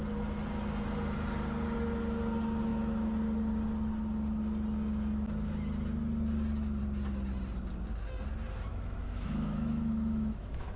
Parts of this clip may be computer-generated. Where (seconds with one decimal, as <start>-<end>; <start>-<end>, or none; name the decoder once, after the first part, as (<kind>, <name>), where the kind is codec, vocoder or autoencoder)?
8.7-10.8 (autoencoder, DAC-VAE)

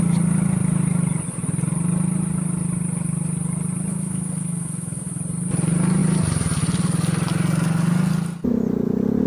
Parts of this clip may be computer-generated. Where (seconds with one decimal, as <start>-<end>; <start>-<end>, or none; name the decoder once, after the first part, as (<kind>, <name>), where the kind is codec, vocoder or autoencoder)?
3.9-5.2 (autoencoder, DAC-VAE)

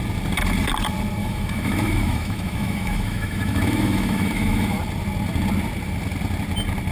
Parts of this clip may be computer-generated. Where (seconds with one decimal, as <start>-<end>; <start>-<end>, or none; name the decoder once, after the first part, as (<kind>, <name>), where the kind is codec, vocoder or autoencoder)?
1.2-4.8 (autoencoder, DAC-VAE)

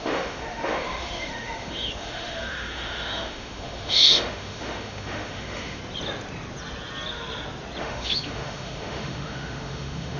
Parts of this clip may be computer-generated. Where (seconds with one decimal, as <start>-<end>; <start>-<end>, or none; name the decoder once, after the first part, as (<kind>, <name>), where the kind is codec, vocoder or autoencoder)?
0.0-5.8 (autoencoder, DAC-VAE); 7.8-10.2